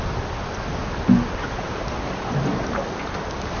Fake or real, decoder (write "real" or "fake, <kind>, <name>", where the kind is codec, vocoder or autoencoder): real